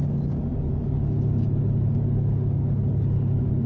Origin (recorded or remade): recorded